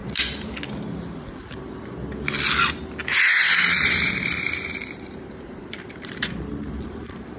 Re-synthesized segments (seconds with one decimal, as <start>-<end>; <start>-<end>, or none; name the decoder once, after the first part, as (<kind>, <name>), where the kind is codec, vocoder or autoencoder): 0.0-0.6 (vocoder, BigVGAN v2); 3.3-7.4